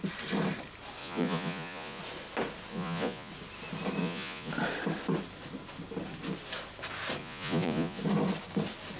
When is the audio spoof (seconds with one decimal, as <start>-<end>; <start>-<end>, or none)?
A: 1.0-2.0; 2.7-3.3; 4.0-4.5; 7.2-8.0